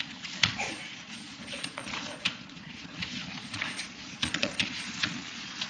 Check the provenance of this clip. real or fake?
fake